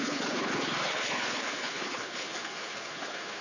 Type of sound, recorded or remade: remade